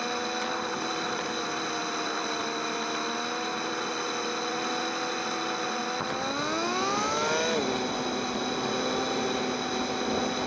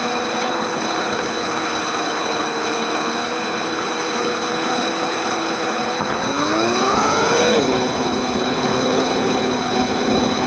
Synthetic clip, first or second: second